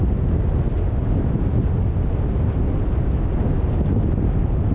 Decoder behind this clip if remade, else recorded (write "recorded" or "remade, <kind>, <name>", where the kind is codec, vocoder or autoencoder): recorded